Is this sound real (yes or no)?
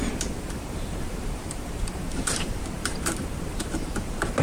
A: no